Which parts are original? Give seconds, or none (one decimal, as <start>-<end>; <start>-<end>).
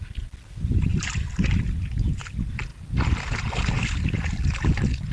0.0-5.1